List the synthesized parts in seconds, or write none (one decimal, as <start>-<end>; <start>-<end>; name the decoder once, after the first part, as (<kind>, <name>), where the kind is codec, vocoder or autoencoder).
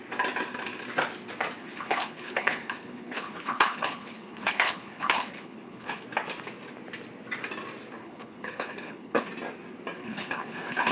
1.6-6.0 (codec, HILCodec); 8.0-9.3; 10.0-10.9